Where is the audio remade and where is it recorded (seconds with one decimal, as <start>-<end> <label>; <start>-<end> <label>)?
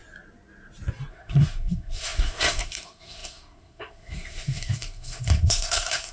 0.0-1.1 recorded; 1.1-6.1 remade